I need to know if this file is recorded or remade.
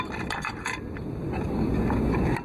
recorded